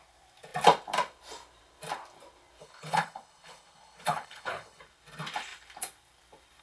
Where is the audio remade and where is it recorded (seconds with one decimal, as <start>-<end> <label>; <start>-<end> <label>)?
0.0-2.6 recorded; 2.6-4.8 remade; 4.8-6.6 recorded